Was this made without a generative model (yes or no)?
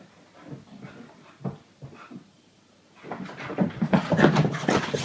yes